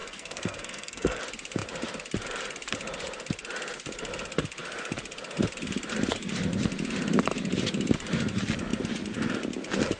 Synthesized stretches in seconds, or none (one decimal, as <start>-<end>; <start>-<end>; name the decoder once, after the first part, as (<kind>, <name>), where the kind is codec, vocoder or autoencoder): 0.0-1.2 (codec, SNAC)